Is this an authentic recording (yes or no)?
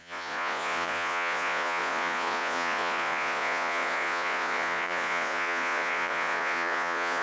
no